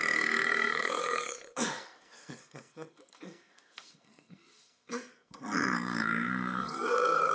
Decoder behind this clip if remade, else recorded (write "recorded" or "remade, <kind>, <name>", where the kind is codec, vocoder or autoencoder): remade, codec, SNAC